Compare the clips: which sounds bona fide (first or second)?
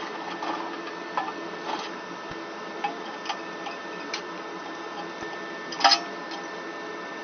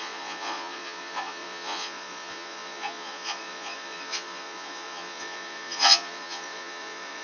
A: first